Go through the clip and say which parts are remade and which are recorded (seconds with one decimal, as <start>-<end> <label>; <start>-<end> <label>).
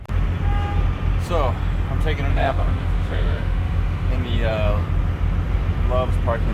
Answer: 0.0-2.3 recorded; 2.3-4.1 remade; 4.1-6.5 recorded